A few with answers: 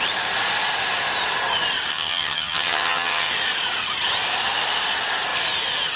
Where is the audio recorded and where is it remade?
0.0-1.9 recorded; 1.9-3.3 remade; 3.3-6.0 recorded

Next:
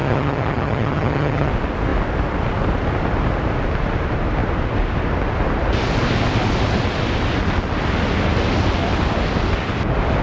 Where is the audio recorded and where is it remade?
0.0-1.5 remade; 1.5-10.2 recorded

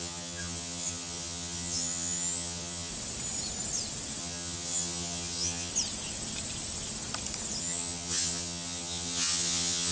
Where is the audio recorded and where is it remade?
0.0-2.9 remade; 2.9-4.2 recorded; 4.2-5.7 remade; 5.7-7.6 recorded; 7.6-9.9 remade

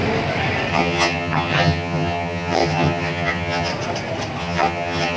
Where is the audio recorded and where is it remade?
0.0-0.7 recorded; 0.7-3.7 remade; 3.7-4.4 recorded; 4.4-5.2 remade

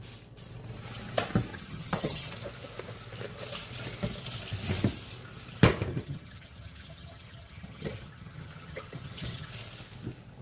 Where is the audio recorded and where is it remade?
0.0-1.5 recorded; 1.5-2.3 remade; 2.3-5.9 recorded; 5.9-9.5 remade; 9.5-10.4 recorded

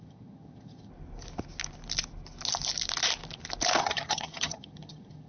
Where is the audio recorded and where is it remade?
0.0-0.9 remade; 0.9-3.8 recorded; 3.8-5.3 remade

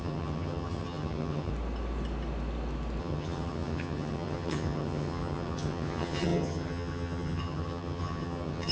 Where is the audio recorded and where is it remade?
0.0-1.5 remade; 1.5-3.0 recorded; 3.0-8.7 remade